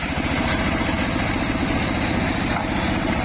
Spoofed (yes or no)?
no